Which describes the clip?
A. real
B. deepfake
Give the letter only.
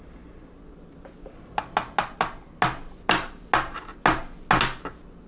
A